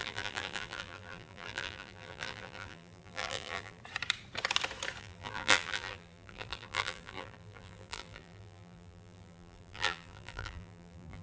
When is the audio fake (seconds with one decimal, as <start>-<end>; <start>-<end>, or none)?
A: 0.0-3.8; 5.0-11.2